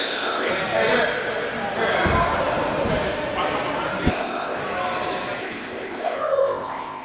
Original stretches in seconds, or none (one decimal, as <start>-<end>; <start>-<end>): 0.5-4.1; 4.6-5.4